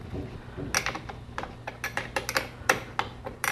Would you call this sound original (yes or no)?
yes